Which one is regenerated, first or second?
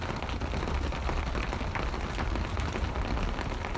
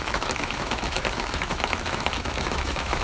second